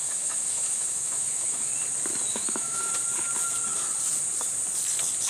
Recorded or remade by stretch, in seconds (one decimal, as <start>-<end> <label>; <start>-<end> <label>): 0.0-1.7 remade; 1.7-2.3 recorded; 2.3-2.9 remade; 2.9-5.3 recorded